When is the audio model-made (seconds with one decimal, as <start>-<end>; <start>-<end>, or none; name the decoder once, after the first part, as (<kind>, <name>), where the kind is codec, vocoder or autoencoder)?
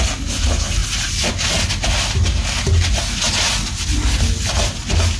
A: 0.8-1.3 (vocoder, BigVGAN v2)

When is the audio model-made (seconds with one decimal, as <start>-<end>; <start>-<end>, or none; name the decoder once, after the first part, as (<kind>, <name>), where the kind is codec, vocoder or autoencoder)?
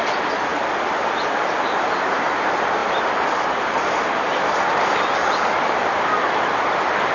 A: 0.5-2.0 (vocoder, BigVGAN v2); 2.8-7.1